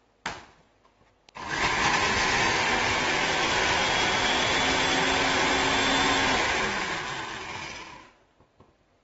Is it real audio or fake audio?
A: real